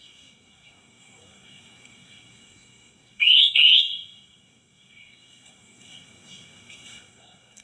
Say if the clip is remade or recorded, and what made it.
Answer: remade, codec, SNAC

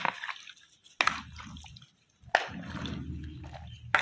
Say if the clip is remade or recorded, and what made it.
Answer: recorded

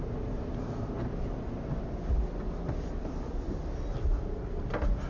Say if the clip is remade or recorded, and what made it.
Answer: recorded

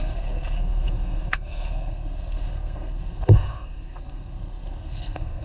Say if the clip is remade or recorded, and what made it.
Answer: remade, codec, SNAC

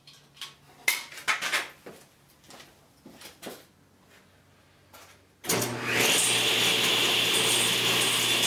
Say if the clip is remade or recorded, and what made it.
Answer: recorded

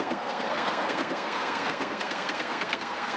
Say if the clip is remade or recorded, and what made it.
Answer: remade, codec, SNAC